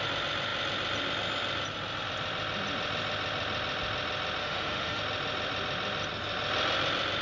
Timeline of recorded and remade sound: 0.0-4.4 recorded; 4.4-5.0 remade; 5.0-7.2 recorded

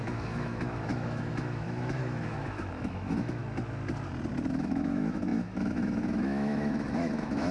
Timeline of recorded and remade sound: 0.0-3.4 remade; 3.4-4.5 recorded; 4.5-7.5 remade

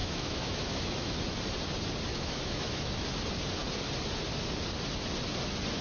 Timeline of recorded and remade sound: 0.0-1.2 remade; 1.2-2.1 recorded; 2.1-3.1 remade; 3.1-5.8 recorded

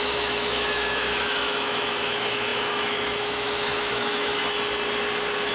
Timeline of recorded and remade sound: 0.0-4.4 remade; 4.4-5.5 recorded